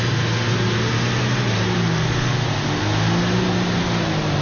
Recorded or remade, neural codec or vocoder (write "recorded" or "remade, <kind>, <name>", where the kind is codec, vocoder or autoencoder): recorded